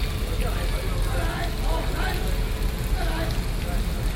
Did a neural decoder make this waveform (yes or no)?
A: no